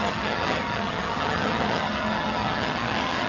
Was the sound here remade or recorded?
remade